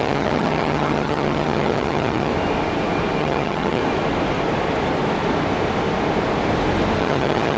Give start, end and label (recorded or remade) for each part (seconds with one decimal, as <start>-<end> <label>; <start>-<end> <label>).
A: 0.0-2.3 remade; 2.3-3.2 recorded; 3.2-3.8 remade; 3.8-7.0 recorded; 7.0-7.6 remade